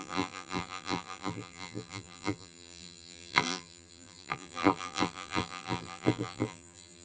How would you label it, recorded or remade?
remade